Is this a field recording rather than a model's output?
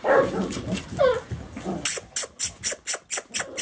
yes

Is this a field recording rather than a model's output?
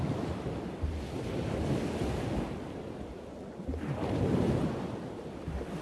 yes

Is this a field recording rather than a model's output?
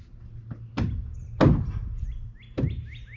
yes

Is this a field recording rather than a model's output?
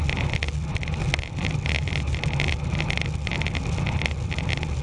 yes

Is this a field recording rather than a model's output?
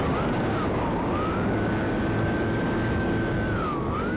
no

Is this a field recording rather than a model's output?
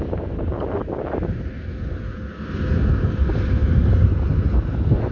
yes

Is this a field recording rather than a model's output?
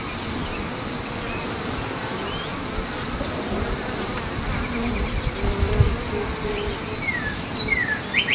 yes